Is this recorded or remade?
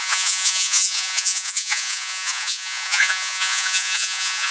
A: remade